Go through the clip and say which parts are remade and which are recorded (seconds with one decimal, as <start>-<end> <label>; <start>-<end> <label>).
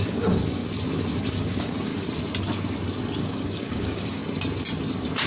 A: 0.0-0.6 remade; 0.6-1.3 recorded; 1.3-1.9 remade; 1.9-3.2 recorded; 3.2-4.2 remade; 4.2-5.3 recorded